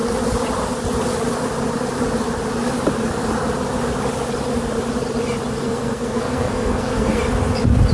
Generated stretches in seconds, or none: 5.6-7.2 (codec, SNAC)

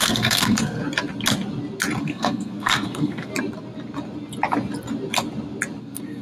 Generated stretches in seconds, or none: 0.0-0.8 (codec, SNAC); 2.0-3.3; 5.8-6.2

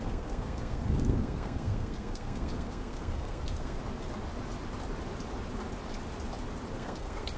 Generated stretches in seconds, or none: 0.0-3.8 (codec, SNAC); 6.7-7.4

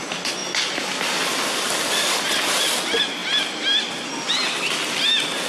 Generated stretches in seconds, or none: none

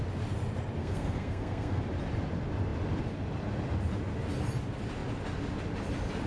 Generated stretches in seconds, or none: 0.8-1.8 (codec, SNAC)

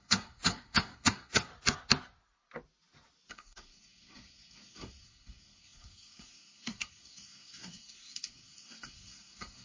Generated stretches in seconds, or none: 0.0-1.5 (codec, SNAC); 3.3-9.6